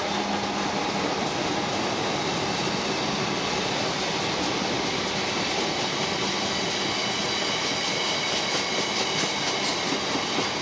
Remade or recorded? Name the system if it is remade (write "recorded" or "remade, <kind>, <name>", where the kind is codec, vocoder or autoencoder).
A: recorded